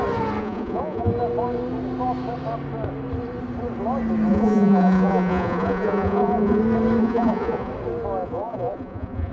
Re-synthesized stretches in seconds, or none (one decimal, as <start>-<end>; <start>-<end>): 0.4-1.1; 4.3-6.6; 7.0-7.7; 8.2-9.3